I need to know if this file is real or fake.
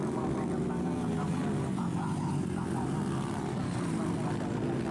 real